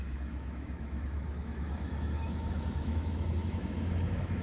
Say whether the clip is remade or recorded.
remade